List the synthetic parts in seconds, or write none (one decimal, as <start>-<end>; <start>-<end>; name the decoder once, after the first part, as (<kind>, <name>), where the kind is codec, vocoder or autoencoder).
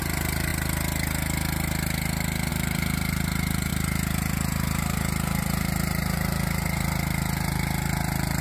0.0-0.5 (vocoder, BigVGAN v2); 2.5-8.4